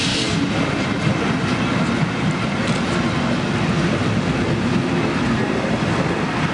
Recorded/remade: recorded